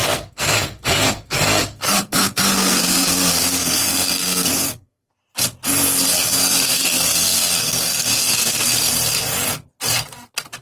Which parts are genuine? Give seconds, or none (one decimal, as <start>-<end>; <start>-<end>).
5.1-6.1; 8.9-10.6